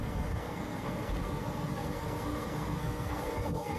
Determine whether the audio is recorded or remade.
remade